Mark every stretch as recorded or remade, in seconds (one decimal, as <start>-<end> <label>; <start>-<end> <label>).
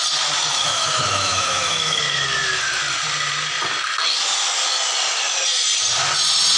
0.0-0.5 recorded; 0.5-2.0 remade; 2.0-6.6 recorded